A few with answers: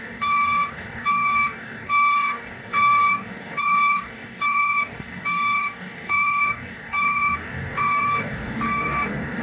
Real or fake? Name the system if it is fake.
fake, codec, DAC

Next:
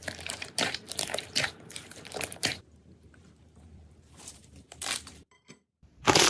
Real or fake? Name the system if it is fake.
fake, vocoder, BigVGAN v2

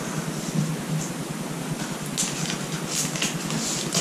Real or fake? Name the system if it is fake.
real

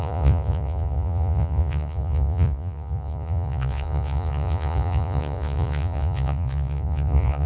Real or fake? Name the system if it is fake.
fake, vocoder, Vocos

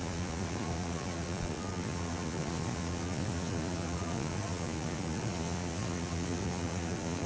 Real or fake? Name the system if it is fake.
fake, vocoder, Vocos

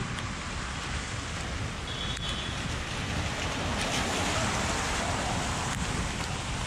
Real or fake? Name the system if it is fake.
real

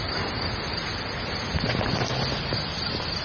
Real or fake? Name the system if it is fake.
real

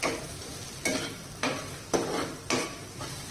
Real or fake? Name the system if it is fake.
real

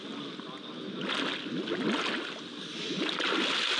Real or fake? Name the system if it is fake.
real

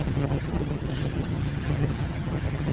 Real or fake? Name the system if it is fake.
fake, vocoder, HiFi-GAN